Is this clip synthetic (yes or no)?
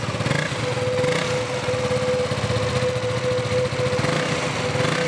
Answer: no